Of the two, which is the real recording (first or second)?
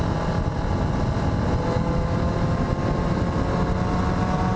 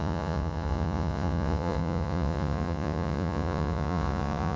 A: first